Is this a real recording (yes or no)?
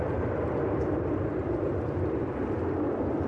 no